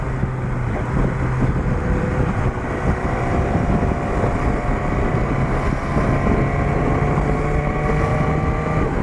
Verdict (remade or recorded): recorded